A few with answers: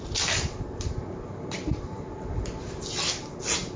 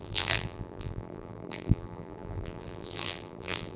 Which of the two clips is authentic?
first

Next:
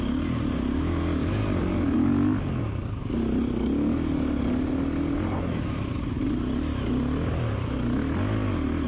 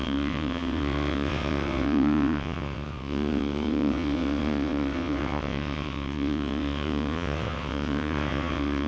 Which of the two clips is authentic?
first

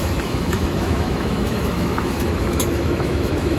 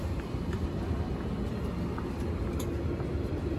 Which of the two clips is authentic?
second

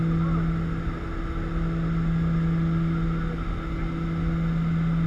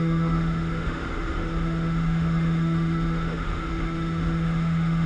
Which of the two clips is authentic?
first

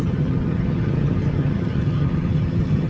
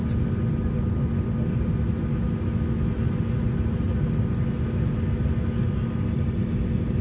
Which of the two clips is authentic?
second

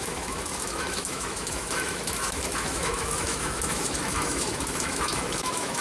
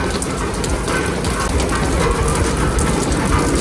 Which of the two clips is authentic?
second